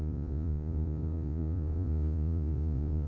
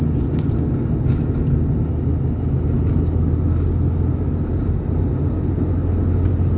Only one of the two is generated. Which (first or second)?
first